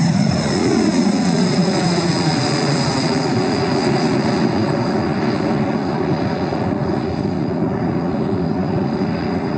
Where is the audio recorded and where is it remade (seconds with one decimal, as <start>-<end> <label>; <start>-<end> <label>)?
0.0-9.6 remade

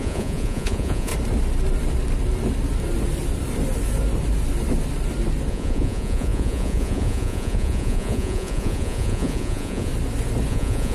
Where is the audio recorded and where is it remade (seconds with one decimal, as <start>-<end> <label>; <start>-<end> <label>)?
0.0-1.1 remade; 1.1-5.5 recorded; 5.5-9.9 remade; 9.9-10.5 recorded; 10.5-10.9 remade